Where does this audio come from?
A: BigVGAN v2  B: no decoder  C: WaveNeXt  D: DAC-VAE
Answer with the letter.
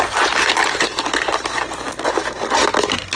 B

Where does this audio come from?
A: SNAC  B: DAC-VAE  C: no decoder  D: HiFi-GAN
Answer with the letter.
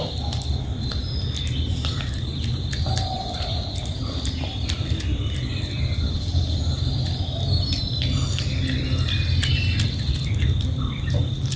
C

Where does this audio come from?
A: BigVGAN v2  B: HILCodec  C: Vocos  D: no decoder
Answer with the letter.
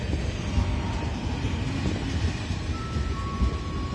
D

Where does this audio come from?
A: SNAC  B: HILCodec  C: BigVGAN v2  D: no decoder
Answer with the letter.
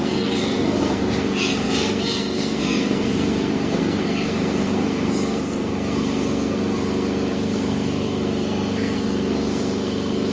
A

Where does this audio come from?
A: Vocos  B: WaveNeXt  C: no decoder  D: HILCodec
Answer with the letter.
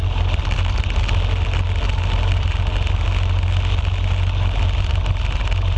C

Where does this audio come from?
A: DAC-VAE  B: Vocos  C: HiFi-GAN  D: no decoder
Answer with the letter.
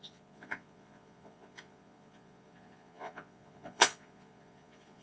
B